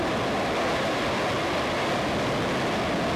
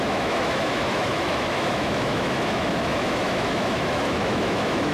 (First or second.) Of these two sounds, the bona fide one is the first